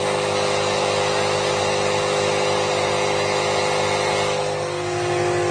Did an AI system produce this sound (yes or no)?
no